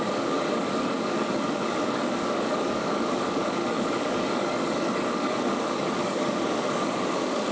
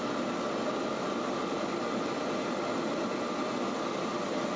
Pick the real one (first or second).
second